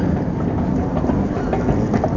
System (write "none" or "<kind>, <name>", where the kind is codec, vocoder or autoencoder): none